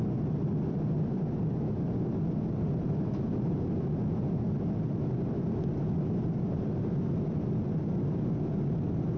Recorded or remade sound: recorded